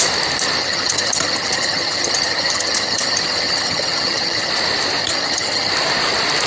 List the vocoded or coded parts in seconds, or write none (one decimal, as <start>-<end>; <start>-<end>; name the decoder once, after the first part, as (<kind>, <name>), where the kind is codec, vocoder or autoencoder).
0.6-4.5 (vocoder, HiFi-GAN); 5.0-5.7